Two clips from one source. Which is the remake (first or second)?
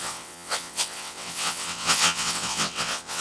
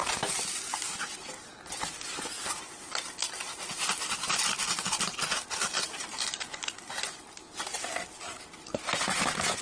first